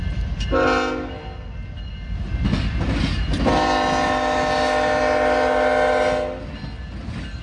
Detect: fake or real real